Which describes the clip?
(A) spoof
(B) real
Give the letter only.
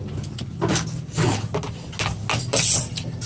B